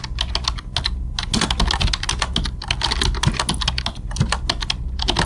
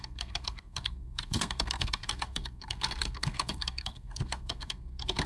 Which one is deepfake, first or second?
second